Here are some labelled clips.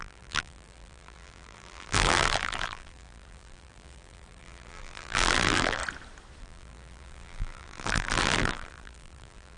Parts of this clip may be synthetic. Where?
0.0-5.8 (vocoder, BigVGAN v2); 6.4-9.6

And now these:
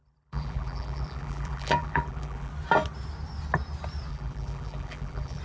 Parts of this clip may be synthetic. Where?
0.0-2.5 (vocoder, BigVGAN v2); 4.1-5.4